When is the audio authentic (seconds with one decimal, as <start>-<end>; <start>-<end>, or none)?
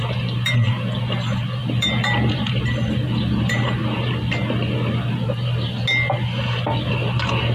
3.8-6.9